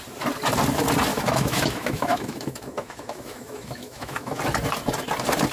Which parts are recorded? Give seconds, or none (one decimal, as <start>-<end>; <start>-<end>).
0.0-1.1; 4.4-5.5